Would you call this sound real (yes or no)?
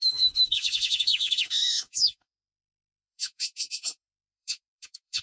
no